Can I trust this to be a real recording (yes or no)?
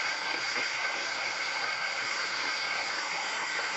no